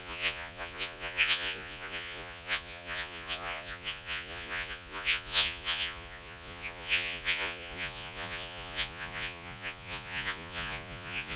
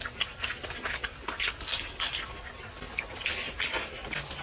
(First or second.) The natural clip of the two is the second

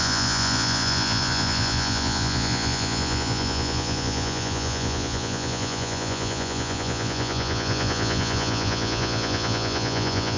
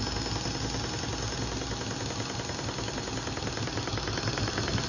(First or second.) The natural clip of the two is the second